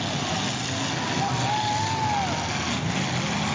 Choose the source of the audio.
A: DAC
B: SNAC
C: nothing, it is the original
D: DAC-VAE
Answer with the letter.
C